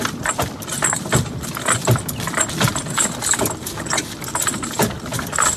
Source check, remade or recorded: recorded